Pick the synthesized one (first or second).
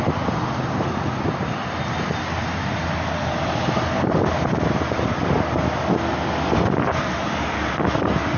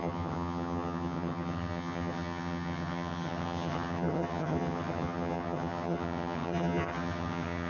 second